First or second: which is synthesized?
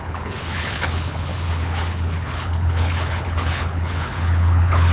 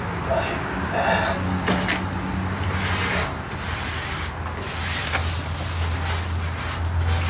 first